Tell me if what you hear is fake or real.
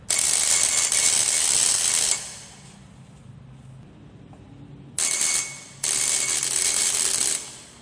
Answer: real